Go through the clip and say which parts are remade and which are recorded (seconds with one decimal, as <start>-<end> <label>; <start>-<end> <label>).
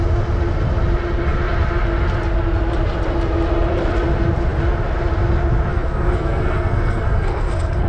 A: 0.0-5.7 recorded; 5.7-7.9 remade